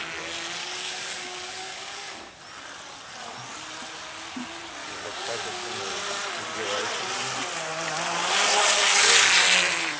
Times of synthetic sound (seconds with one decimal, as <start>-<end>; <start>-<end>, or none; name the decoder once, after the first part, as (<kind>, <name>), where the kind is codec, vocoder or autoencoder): 0.6-2.4 (codec, DAC); 4.8-5.8